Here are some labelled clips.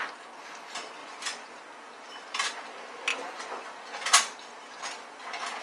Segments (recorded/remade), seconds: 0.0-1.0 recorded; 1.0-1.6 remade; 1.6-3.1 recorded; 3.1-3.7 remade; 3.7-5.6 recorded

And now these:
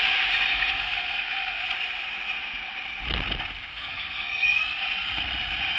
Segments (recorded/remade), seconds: 0.0-0.5 recorded; 0.5-1.7 remade; 1.7-3.7 recorded; 3.7-4.6 remade; 4.6-5.8 recorded

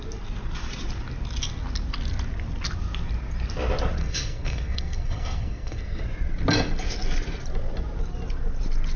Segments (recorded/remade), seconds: 0.0-4.0 recorded; 4.0-6.0 remade; 6.0-9.0 recorded

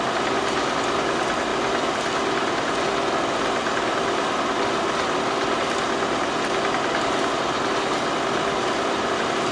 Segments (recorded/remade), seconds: 0.0-9.5 recorded

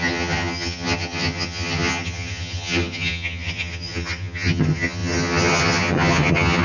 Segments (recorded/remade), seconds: 0.0-6.6 remade

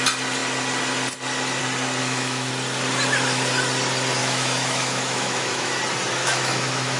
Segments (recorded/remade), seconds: 0.0-2.0 recorded; 2.0-2.5 remade; 2.5-4.2 recorded; 4.2-5.8 remade; 5.8-6.2 recorded; 6.2-7.0 remade

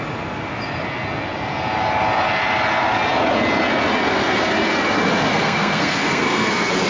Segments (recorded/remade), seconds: 0.0-5.3 recorded; 5.3-6.5 remade; 6.5-6.9 recorded

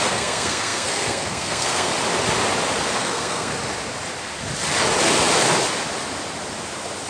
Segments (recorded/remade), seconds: 0.0-1.9 remade; 1.9-3.0 recorded; 3.0-3.5 remade; 3.5-7.1 recorded